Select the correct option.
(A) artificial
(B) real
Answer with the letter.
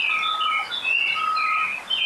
B